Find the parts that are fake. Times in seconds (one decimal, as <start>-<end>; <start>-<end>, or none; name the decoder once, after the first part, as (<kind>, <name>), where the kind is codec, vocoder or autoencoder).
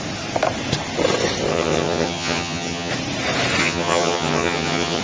1.5-2.9 (vocoder, HiFi-GAN); 3.6-5.0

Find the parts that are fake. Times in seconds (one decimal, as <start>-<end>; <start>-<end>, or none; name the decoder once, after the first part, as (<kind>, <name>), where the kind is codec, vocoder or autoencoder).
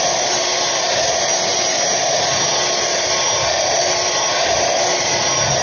none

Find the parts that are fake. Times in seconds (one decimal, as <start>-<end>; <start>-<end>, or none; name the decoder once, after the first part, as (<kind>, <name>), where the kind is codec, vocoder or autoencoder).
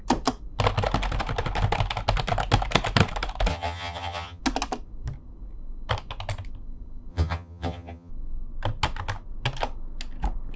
3.5-4.4 (vocoder, HiFi-GAN); 7.1-8.1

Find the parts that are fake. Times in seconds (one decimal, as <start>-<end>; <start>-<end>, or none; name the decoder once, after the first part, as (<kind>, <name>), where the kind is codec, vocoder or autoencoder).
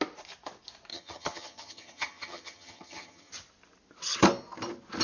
0.9-3.3 (vocoder, HiFi-GAN)